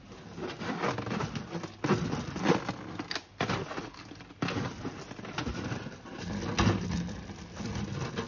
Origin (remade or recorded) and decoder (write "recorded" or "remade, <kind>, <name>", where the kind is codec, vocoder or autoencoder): recorded